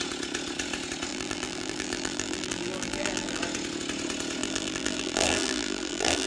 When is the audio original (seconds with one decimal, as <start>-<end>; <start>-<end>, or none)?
0.0-1.1; 3.4-4.4